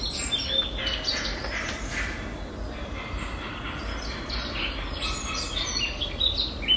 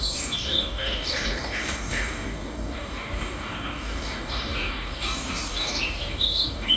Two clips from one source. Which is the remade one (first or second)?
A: second